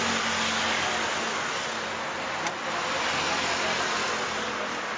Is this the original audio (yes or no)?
yes